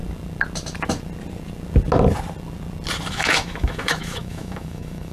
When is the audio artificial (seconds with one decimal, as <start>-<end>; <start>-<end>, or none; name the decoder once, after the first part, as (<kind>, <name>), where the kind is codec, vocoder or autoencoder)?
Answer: 3.1-5.1 (autoencoder, DAC-VAE)

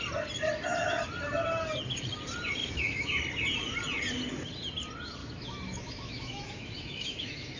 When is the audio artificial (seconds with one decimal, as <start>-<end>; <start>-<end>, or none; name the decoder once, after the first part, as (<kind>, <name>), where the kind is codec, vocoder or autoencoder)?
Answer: 2.6-3.2 (autoencoder, DAC-VAE); 5.2-7.6